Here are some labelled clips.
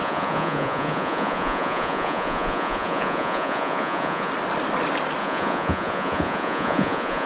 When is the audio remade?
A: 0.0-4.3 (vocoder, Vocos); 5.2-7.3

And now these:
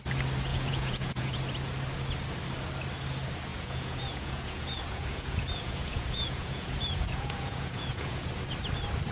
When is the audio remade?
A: 0.5-1.4 (vocoder, Vocos); 3.5-8.3

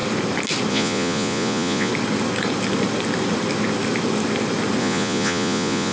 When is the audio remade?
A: 0.7-1.9 (vocoder, Vocos); 4.8-5.9

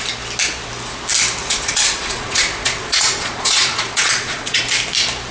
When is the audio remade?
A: 1.4-4.6 (vocoder, Vocos)

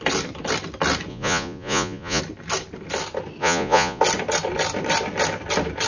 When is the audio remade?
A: 1.1-2.2 (vocoder, Vocos); 3.4-4.0

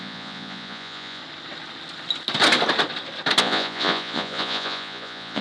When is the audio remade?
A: 0.0-1.2 (vocoder, Vocos); 3.4-5.4